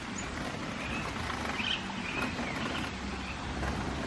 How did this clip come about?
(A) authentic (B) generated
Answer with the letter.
A